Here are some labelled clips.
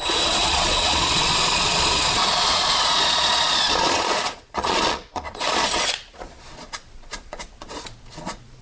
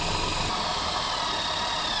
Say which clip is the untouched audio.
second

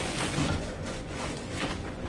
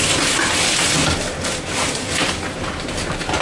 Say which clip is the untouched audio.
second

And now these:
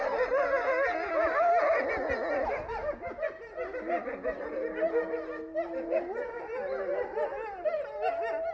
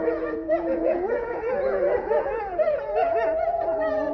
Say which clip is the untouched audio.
first